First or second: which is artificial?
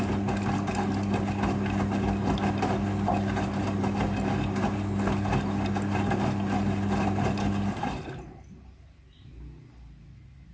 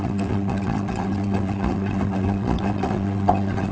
second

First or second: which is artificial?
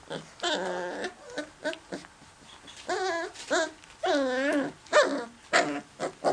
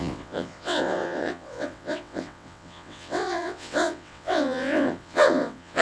second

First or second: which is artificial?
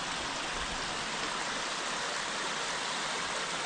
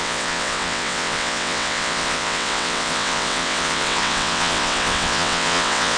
second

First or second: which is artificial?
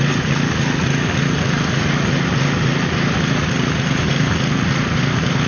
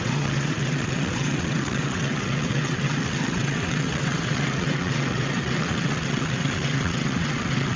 second